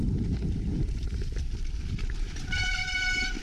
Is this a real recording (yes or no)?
no